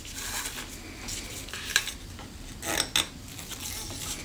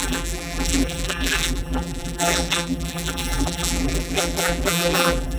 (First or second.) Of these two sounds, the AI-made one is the second